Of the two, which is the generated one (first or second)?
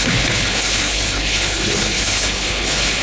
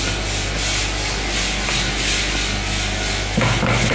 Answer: first